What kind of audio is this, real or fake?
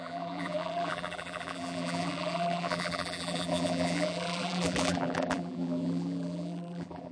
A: fake